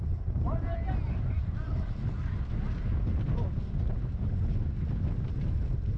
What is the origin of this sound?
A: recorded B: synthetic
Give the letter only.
A